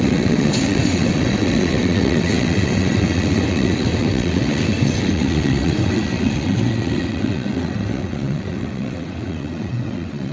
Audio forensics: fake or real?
fake